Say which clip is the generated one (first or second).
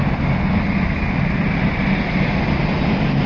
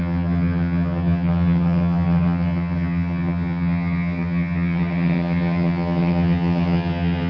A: second